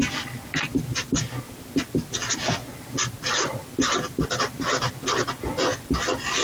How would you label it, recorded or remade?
recorded